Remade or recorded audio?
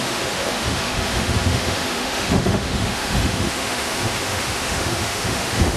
remade